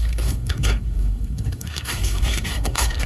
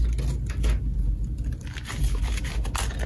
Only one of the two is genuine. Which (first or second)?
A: second